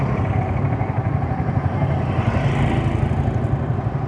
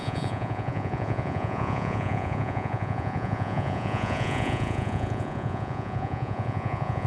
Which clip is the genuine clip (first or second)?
first